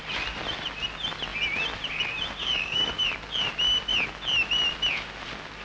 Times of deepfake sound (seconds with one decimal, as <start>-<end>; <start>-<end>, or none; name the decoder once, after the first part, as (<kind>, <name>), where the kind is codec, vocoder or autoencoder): 2.4-2.9 (codec, DAC)